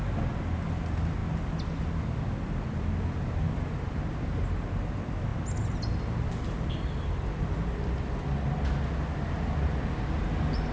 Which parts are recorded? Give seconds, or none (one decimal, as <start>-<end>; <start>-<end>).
0.0-10.7

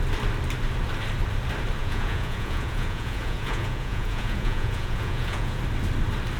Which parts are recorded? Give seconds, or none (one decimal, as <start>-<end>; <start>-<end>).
0.0-1.8; 5.6-6.4